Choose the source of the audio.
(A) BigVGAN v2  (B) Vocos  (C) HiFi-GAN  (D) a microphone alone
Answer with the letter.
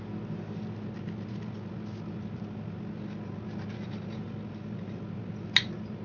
D